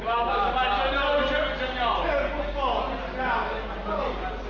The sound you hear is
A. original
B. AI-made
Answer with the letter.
A